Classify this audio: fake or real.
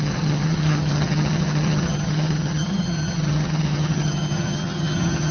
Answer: fake